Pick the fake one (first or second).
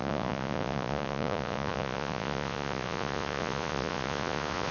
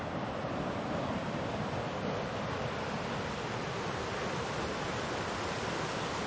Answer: first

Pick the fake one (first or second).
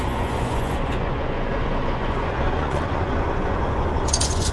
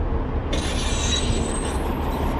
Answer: first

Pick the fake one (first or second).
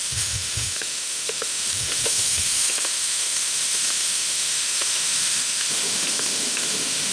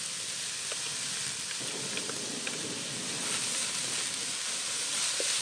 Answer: first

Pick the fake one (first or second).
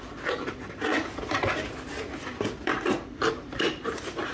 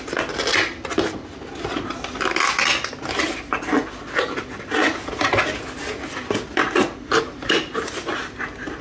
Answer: first